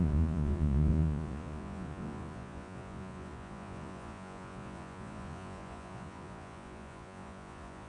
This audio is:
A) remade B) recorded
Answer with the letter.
A